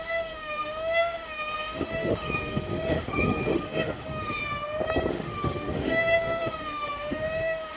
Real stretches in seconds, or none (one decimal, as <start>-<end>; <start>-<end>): 4.4-5.1